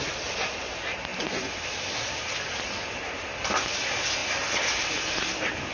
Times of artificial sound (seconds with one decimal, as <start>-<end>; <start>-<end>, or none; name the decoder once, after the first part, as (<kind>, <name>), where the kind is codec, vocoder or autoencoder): none